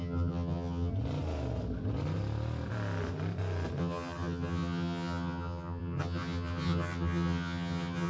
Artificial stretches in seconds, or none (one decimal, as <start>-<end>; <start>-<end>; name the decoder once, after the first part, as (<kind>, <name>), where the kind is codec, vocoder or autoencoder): 0.0-0.9 (vocoder, HiFi-GAN); 3.8-8.1